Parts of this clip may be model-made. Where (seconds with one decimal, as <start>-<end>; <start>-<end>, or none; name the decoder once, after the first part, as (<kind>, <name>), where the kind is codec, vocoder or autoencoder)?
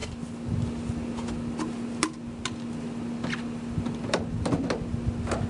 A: none